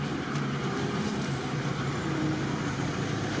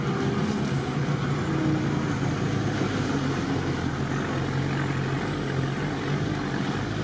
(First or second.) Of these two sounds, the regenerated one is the first